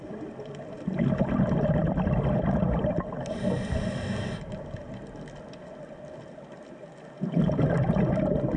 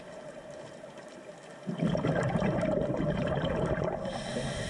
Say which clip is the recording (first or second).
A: first